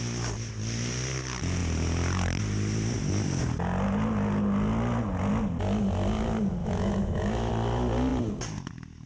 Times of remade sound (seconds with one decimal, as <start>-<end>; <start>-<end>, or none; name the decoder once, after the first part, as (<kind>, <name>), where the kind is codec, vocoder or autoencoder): 6.6-7.5 (autoencoder, DAC-VAE)